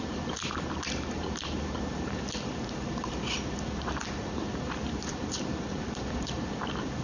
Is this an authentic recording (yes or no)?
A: no